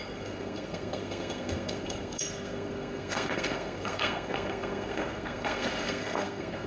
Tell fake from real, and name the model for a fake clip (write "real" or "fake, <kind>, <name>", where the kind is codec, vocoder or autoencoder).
fake, codec, SNAC